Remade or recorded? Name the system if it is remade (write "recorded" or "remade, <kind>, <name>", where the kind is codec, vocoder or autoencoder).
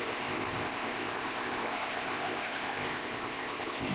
remade, codec, ZipCodec